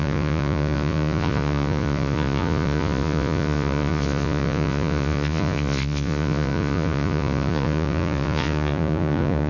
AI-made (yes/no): yes